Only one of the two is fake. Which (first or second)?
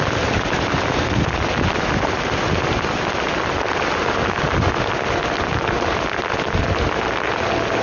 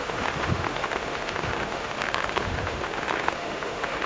second